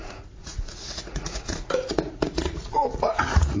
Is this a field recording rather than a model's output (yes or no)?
no